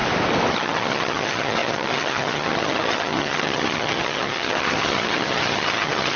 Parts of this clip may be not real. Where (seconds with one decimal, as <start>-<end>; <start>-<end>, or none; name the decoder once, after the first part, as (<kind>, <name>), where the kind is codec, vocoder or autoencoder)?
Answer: 0.5-6.2 (vocoder, HiFi-GAN)